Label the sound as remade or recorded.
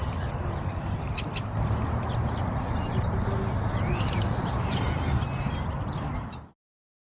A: recorded